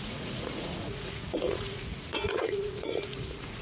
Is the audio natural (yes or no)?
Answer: no